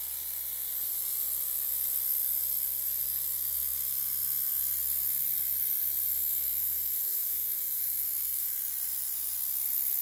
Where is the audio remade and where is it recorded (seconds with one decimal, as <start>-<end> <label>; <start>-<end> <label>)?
0.0-6.2 recorded; 6.2-8.5 remade; 8.5-10.0 recorded